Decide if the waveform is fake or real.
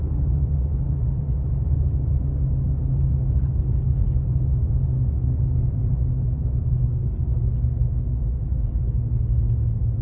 real